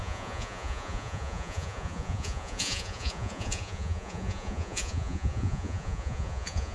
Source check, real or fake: fake